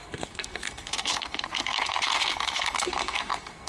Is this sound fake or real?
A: fake